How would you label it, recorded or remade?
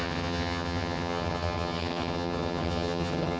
remade